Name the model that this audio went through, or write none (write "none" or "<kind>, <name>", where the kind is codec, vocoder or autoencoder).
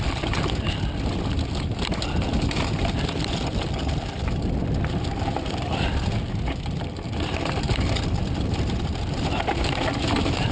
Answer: vocoder, BigVGAN v2